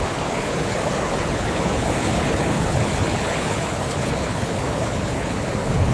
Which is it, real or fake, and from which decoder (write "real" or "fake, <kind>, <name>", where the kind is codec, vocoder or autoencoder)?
fake, codec, HILCodec